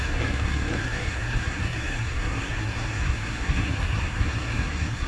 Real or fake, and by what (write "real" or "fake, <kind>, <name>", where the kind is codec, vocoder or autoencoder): fake, codec, SNAC